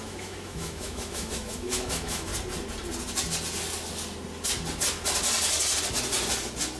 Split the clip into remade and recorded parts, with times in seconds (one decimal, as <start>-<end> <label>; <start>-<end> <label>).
0.0-2.3 remade; 2.3-6.8 recorded